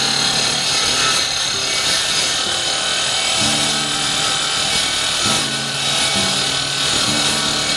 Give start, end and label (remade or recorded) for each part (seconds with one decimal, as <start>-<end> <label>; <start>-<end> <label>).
0.0-7.8 recorded